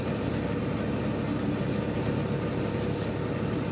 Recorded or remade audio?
recorded